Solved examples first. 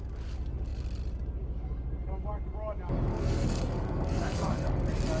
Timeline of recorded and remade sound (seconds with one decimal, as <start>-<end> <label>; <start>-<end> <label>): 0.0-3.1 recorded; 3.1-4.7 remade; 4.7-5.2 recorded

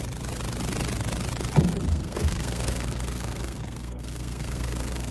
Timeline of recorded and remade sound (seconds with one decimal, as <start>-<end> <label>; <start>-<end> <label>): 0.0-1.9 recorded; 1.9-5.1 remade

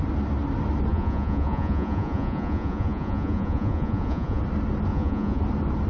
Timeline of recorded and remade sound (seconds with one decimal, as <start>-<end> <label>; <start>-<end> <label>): 0.0-0.9 recorded; 0.9-4.4 remade; 4.4-4.9 recorded; 4.9-5.4 remade; 5.4-5.9 recorded